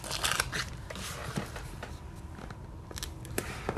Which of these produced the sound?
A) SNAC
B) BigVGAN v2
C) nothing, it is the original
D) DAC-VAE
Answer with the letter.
C